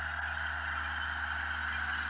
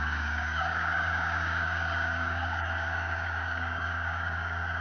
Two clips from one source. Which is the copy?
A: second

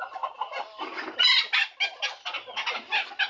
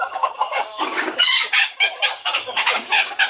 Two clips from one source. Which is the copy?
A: second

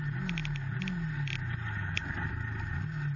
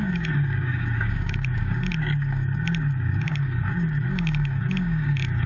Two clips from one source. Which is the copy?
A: second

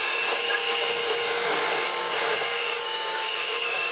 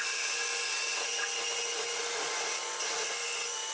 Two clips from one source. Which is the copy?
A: first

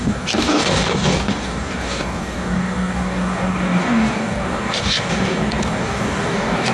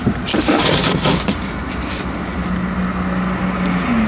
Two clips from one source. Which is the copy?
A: first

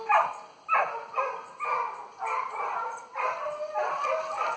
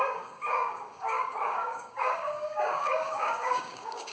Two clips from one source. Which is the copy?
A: second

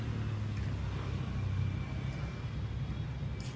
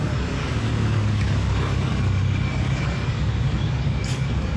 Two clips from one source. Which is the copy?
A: second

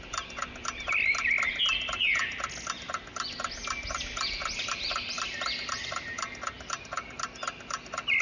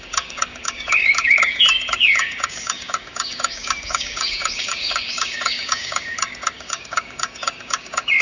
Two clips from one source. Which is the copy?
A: second